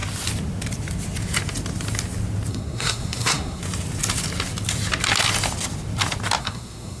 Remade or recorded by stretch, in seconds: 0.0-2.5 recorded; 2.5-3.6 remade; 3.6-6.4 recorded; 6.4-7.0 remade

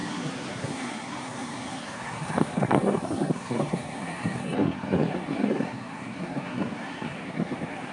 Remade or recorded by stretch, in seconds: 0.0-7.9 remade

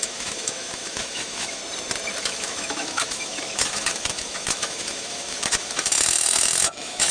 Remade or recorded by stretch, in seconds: 0.0-1.6 remade; 1.6-2.2 recorded; 2.2-7.1 remade